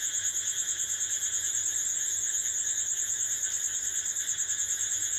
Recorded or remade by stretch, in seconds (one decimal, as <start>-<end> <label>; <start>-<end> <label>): 0.0-3.4 remade; 3.4-4.5 recorded; 4.5-5.2 remade